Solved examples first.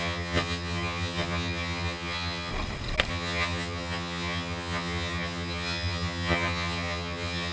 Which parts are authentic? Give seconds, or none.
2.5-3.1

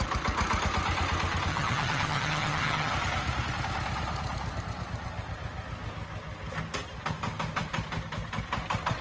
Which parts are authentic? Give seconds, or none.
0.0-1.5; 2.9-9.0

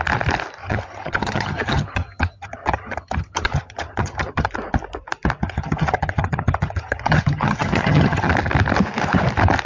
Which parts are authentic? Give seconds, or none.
0.0-0.6; 4.5-5.4; 8.3-9.7

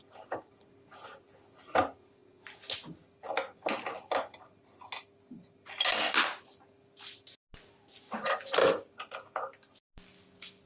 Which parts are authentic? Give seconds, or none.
0.0-10.7